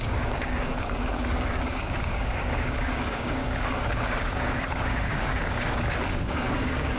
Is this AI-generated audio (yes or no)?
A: yes